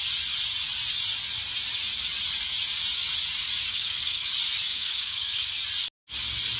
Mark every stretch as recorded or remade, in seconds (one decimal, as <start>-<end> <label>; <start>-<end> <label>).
0.0-3.7 recorded; 3.7-4.3 remade; 4.3-4.7 recorded; 4.7-5.5 remade; 5.5-6.6 recorded